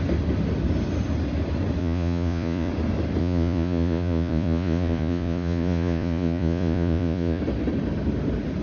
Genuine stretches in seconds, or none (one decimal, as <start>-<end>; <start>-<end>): 0.0-1.8; 2.7-3.2; 7.4-8.6